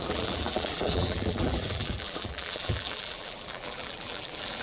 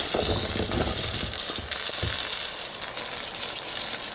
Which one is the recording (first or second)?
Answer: second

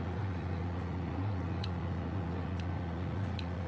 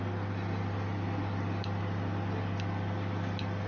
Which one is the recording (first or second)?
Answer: second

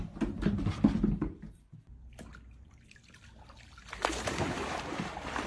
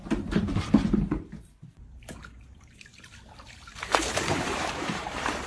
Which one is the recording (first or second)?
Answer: first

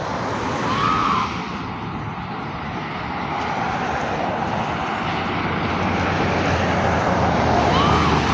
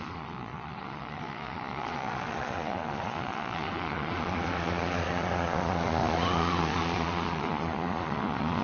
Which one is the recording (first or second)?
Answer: first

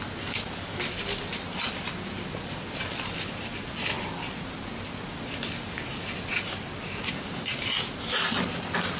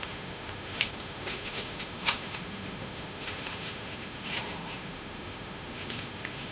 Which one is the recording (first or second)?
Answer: first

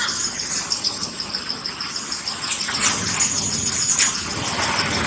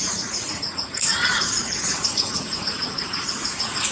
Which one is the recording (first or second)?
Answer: first